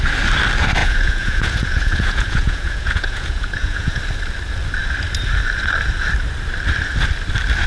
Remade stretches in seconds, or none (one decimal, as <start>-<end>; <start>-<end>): 0.8-4.0